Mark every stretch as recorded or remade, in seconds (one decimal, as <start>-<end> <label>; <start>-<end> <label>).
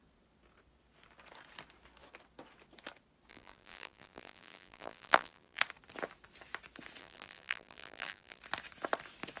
0.0-3.3 recorded; 3.3-5.6 remade; 5.6-7.0 recorded; 7.0-8.4 remade; 8.4-9.4 recorded